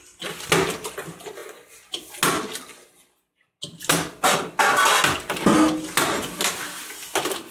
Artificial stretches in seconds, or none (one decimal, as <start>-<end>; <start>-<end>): none